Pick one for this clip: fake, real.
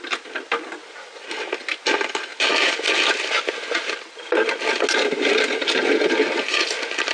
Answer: real